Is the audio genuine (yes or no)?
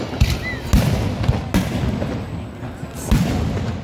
yes